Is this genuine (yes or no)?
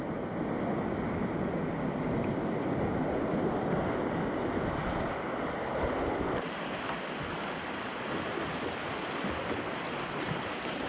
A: yes